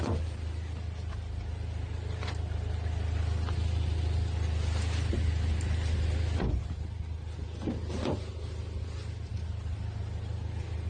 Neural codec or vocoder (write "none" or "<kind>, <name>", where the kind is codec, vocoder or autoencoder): none